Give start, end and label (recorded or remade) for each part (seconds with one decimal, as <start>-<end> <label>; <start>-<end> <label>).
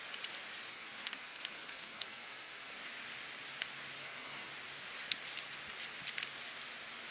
0.0-0.7 recorded; 0.7-2.8 remade; 2.8-4.0 recorded; 4.0-4.5 remade; 4.5-7.1 recorded